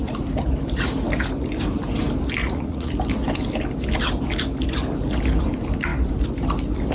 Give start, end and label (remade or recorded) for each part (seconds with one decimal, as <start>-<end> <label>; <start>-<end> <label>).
0.0-2.4 recorded; 2.4-2.9 remade; 2.9-6.9 recorded